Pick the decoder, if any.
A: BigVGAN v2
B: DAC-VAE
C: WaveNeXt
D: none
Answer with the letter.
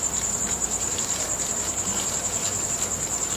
A